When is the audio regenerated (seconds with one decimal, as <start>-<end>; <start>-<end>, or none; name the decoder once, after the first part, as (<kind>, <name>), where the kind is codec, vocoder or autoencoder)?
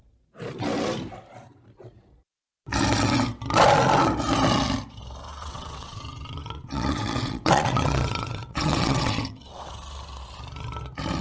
5.3-9.7 (vocoder, WaveNeXt)